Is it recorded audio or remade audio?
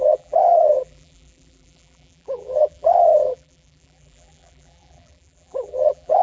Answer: remade